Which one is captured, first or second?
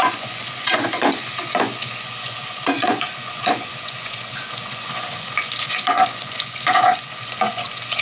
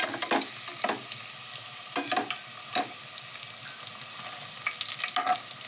second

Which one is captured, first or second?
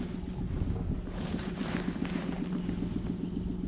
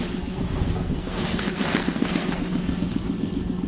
first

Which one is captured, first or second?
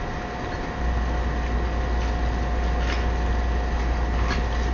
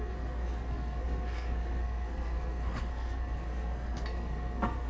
first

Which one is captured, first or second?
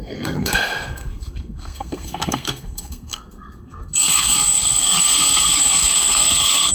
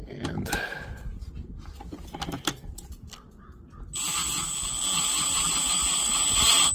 second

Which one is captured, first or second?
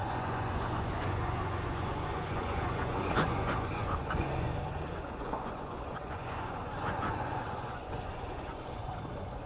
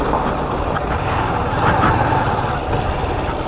second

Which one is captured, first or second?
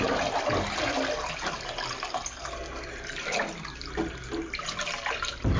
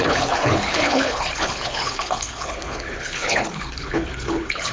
first